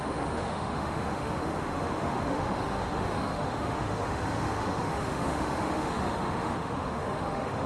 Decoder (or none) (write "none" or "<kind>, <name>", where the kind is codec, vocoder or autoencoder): autoencoder, DAC-VAE